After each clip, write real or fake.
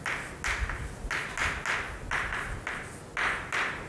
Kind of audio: real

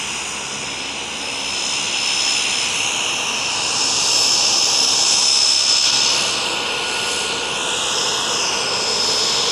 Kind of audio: real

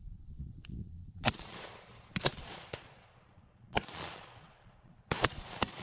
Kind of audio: fake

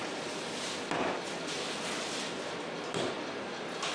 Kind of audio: real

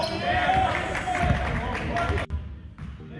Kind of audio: real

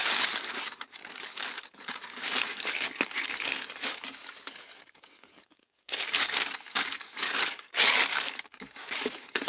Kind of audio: fake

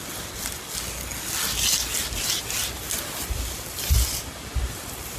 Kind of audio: real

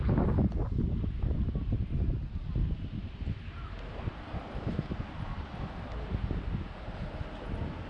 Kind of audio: real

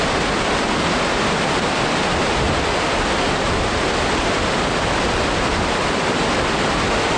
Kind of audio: real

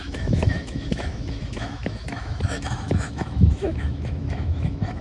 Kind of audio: fake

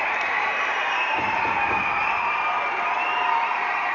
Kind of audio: fake